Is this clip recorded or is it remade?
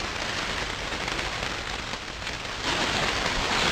recorded